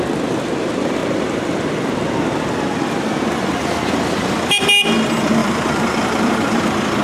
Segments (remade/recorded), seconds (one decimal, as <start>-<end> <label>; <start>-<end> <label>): 0.0-5.4 recorded; 5.4-6.6 remade; 6.6-7.0 recorded